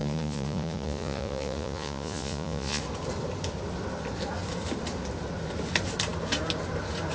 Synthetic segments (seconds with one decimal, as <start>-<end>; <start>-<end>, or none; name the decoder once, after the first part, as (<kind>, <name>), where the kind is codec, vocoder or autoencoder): 0.0-2.8 (vocoder, Vocos)